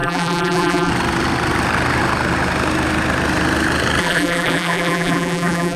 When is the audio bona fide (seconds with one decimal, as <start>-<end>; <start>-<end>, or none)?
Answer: 0.9-4.0